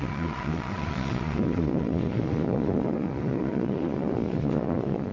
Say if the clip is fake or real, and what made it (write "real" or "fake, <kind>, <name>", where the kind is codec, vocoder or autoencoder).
fake, vocoder, Vocos